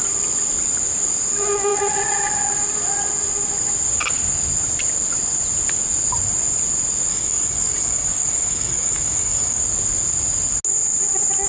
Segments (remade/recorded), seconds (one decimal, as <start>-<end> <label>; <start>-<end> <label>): 0.0-7.1 recorded; 7.1-9.6 remade; 9.6-11.5 recorded